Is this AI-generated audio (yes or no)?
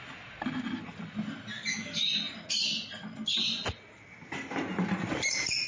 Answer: no